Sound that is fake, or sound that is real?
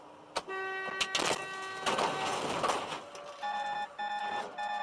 real